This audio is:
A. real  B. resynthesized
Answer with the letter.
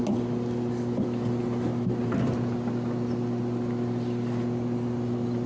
A